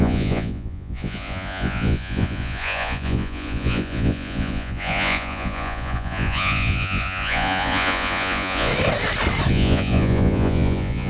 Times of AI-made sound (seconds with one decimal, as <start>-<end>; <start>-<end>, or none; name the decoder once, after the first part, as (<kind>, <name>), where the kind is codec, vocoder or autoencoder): 0.0-8.7 (vocoder, Vocos); 9.5-11.1